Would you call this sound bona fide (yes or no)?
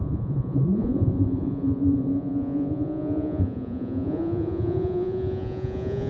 no